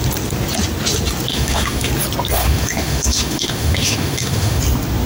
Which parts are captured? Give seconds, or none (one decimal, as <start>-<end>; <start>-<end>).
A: 0.0-1.3; 1.9-2.4; 4.6-5.1